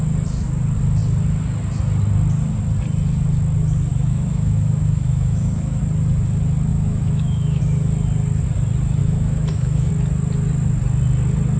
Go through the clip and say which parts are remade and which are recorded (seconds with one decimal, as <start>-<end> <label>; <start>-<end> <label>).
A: 0.0-3.9 recorded; 3.9-5.8 remade; 5.8-6.7 recorded; 6.7-7.6 remade; 7.6-9.0 recorded; 9.0-9.9 remade; 9.9-11.6 recorded